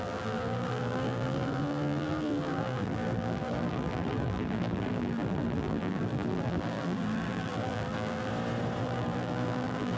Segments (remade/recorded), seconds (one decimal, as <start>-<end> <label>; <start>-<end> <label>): 0.0-8.3 remade; 8.3-8.8 recorded; 8.8-10.0 remade